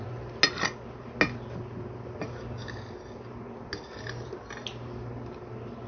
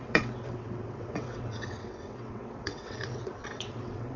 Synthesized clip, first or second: second